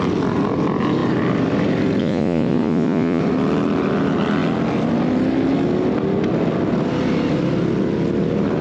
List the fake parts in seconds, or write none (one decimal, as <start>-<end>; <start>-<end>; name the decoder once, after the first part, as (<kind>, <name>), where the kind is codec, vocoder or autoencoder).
2.0-3.2 (vocoder, Vocos)